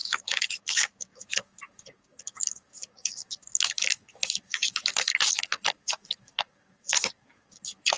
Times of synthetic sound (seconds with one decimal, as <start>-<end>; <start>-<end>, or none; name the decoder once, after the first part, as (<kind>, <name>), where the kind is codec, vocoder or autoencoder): 0.0-8.0 (codec, DAC)